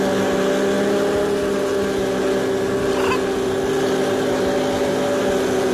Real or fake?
real